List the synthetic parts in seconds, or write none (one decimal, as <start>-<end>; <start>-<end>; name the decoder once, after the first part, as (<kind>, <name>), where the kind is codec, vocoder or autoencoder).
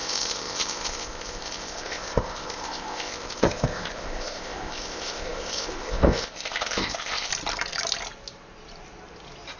0.0-7.3 (codec, ZipCodec)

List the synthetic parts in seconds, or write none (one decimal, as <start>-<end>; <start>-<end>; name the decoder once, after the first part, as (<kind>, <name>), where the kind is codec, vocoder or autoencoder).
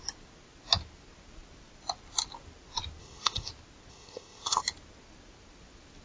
3.0-3.5 (codec, ZipCodec); 3.9-4.6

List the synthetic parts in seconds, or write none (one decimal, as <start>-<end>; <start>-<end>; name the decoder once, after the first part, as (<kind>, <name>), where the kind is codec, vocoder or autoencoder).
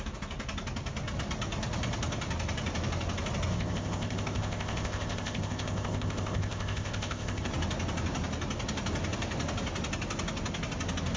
3.5-7.5 (codec, ZipCodec)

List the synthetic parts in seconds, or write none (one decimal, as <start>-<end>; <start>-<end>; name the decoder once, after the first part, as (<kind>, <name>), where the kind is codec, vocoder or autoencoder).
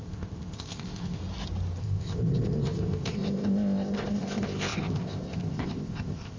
0.0-1.2 (codec, ZipCodec); 1.8-6.4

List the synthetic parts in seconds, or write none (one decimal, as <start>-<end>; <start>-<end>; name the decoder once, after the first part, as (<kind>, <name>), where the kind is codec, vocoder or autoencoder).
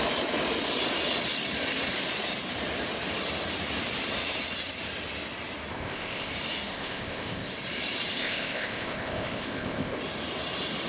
5.7-6.3 (codec, ZipCodec); 6.7-7.5; 8.2-10.0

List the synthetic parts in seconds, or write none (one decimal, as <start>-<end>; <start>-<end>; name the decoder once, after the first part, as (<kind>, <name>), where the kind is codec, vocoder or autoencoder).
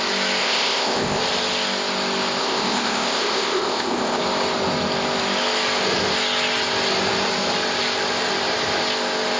0.4-1.2 (codec, ZipCodec); 2.4-4.2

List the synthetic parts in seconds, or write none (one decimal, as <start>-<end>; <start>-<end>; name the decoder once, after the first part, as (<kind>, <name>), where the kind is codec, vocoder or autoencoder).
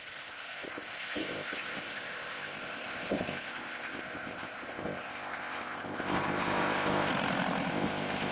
0.0-7.1 (codec, ZipCodec); 7.7-8.3